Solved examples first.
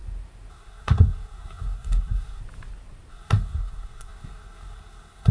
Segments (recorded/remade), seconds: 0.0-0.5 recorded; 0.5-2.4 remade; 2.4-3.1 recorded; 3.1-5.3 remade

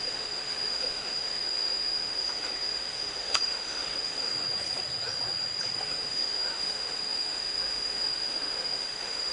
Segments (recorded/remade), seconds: 0.0-4.3 remade; 4.3-5.8 recorded; 5.8-9.3 remade

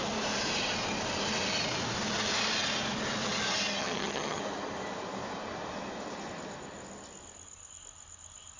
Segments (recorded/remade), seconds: 0.0-3.8 recorded; 3.8-4.4 remade; 4.4-8.6 recorded

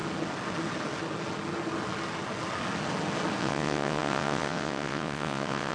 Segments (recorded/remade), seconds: 0.0-3.4 recorded; 3.4-5.7 remade

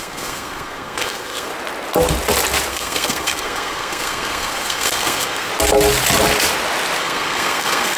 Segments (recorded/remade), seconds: 0.0-1.5 remade; 1.5-2.7 recorded; 2.7-5.5 remade; 5.5-7.0 recorded; 7.0-8.0 remade

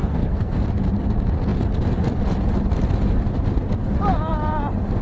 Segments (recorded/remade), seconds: 0.0-0.6 remade; 0.6-5.0 recorded

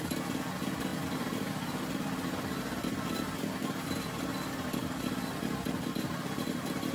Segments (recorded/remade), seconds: 0.0-0.9 recorded; 0.9-5.0 remade; 5.0-6.9 recorded